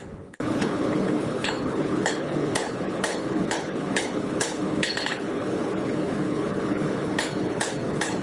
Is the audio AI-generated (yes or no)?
yes